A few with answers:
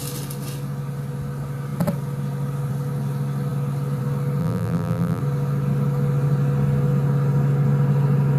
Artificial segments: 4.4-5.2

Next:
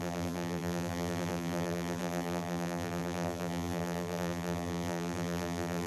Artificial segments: 0.0-5.9

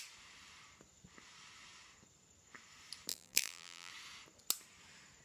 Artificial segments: 3.1-3.9

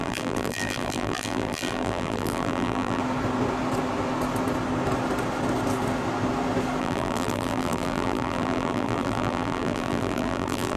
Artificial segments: 0.0-3.0; 6.8-10.8

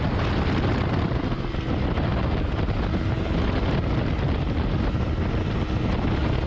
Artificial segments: none